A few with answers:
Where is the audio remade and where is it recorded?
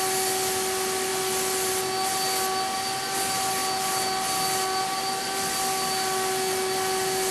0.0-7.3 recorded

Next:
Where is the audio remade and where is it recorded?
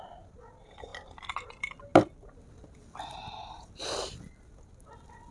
0.0-5.3 recorded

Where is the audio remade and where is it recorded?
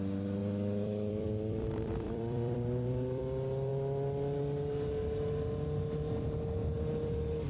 0.0-0.4 recorded; 0.4-3.2 remade; 3.2-7.5 recorded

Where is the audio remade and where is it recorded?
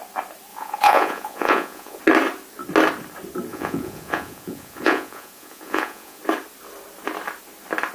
0.0-0.5 recorded; 0.5-2.0 remade; 2.0-3.5 recorded; 3.5-6.2 remade; 6.2-7.9 recorded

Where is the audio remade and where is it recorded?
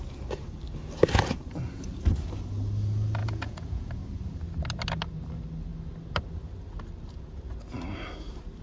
0.0-3.2 recorded; 3.2-3.9 remade; 3.9-8.6 recorded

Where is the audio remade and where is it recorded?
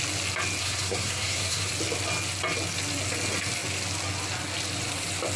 0.0-0.6 recorded; 0.6-1.7 remade; 1.7-5.4 recorded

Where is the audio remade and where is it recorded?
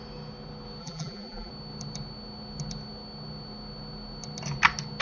0.0-0.8 recorded; 0.8-1.5 remade; 1.5-5.0 recorded